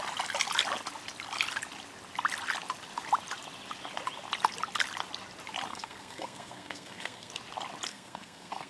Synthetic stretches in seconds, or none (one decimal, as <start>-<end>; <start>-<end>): 5.7-7.3; 7.9-8.7